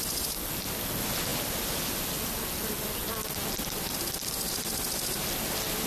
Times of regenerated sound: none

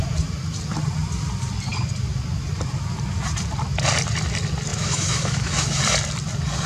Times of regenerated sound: 4.7-5.8

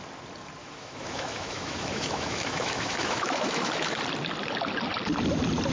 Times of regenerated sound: 0.6-4.0

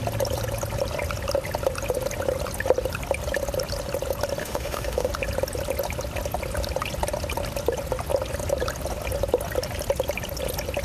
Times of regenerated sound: 4.4-5.1

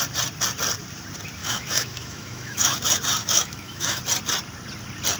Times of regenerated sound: 1.4-2.8; 3.2-4.0

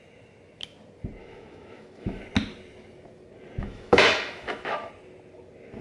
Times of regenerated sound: 1.2-2.2; 3.6-4.9

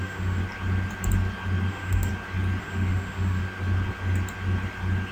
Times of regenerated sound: 0.0-0.4; 1.7-2.1; 2.6-3.4